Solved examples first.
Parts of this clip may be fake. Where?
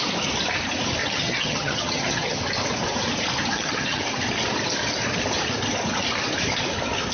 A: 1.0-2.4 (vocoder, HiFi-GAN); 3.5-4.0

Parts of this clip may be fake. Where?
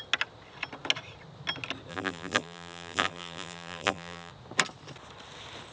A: 1.9-4.3 (vocoder, BigVGAN v2)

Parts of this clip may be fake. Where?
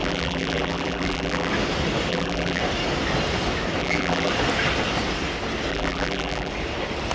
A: 0.0-1.5 (vocoder, BigVGAN v2); 2.1-2.6; 3.8-4.3; 5.7-6.5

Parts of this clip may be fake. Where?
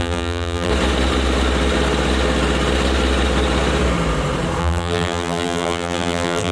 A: 0.0-0.7 (vocoder, BigVGAN v2); 4.6-6.5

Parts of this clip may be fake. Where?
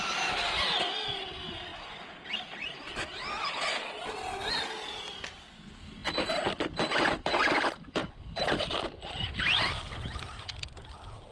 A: none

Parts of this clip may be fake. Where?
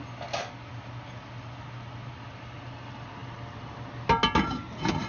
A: none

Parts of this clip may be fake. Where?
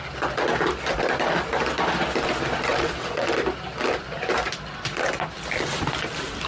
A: 2.7-3.3 (vocoder, WaveNeXt)